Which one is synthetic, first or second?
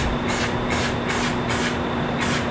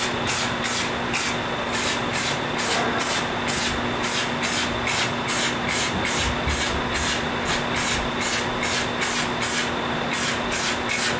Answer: first